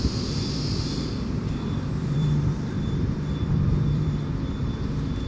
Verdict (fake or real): fake